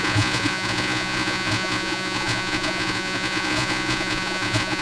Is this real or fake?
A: fake